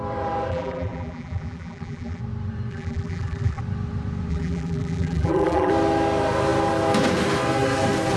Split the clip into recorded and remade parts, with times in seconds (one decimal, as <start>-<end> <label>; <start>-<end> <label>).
0.0-0.5 recorded; 0.5-2.2 remade; 2.2-2.7 recorded; 2.7-3.6 remade; 3.6-4.3 recorded; 4.3-5.7 remade; 5.7-8.2 recorded